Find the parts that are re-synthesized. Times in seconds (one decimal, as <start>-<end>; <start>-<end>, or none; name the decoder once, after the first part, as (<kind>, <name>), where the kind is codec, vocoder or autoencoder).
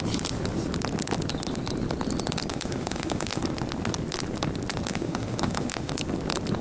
2.5-3.4 (autoencoder, DAC-VAE); 4.9-5.9